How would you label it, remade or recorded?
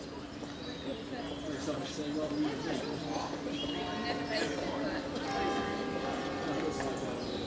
recorded